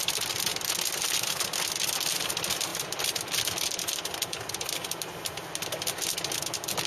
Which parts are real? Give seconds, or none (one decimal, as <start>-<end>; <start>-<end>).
0.0-6.9